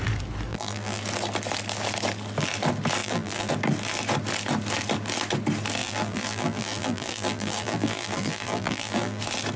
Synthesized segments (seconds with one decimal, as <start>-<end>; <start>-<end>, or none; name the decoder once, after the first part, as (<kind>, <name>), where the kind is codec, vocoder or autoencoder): 0.5-1.0 (vocoder, BigVGAN v2); 3.0-3.5; 5.8-9.2